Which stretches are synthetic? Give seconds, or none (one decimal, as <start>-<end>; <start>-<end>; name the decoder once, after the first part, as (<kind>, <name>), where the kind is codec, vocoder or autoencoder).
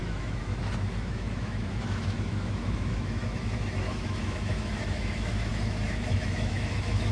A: 0.0-7.1 (autoencoder, DAC-VAE)